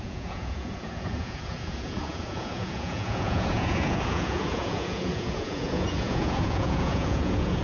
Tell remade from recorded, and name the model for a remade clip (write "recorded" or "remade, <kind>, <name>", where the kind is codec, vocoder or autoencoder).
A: remade, vocoder, Vocos